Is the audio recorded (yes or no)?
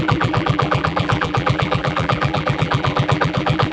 no